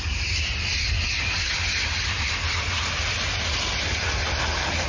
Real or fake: real